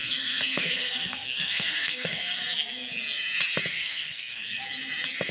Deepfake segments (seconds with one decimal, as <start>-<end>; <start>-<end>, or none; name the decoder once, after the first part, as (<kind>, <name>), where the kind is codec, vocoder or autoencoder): 0.0-2.4 (codec, SNAC); 3.7-4.6

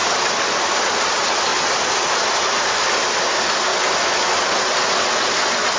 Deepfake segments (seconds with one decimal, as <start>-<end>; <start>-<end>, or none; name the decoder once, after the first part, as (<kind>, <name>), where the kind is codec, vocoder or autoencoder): none

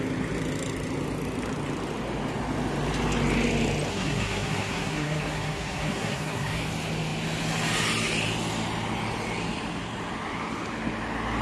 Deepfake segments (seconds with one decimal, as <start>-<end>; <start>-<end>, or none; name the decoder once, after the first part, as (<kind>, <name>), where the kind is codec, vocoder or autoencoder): 3.9-6.6 (codec, SNAC)

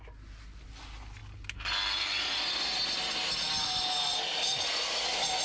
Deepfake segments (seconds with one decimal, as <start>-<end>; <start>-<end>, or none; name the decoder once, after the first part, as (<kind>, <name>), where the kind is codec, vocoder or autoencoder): none

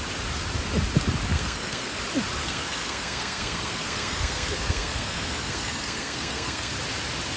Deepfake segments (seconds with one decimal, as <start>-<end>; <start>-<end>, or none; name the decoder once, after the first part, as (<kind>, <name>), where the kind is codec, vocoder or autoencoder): 1.3-2.0 (codec, SNAC); 2.4-6.7

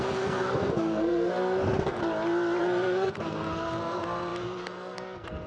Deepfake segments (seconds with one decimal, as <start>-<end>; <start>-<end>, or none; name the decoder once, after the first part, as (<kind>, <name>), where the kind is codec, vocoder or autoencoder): 0.0-2.0 (codec, SNAC); 2.6-5.5

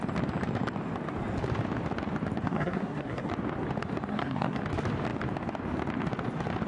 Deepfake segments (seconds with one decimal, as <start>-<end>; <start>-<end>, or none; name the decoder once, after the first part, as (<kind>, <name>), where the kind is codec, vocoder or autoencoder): 2.4-3.3 (codec, SNAC); 4.1-4.6